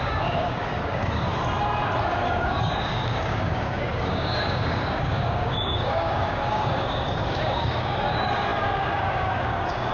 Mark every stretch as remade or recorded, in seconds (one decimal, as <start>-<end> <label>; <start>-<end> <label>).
0.0-1.3 remade; 1.3-2.0 recorded; 2.0-9.9 remade